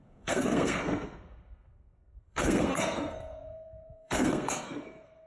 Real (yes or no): no